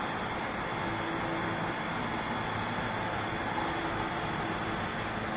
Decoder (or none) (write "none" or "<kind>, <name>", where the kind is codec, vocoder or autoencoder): none